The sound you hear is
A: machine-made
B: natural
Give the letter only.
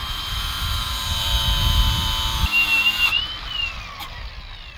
A